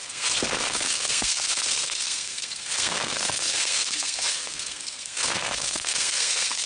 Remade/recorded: remade